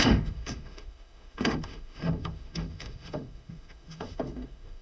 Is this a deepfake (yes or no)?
yes